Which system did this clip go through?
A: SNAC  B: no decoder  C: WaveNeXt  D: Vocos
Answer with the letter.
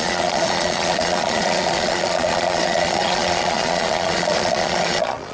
D